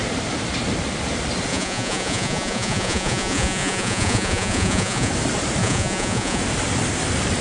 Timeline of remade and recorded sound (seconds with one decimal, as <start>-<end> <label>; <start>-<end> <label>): 0.0-1.5 recorded; 1.5-5.1 remade; 5.1-5.6 recorded; 5.6-6.4 remade; 6.4-7.4 recorded